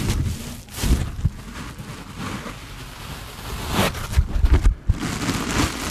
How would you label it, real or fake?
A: real